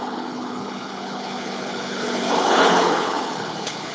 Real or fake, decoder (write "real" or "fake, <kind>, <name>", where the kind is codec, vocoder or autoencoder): fake, codec, HILCodec